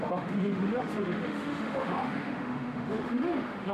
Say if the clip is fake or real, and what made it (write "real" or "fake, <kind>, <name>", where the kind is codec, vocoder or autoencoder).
fake, autoencoder, DAC-VAE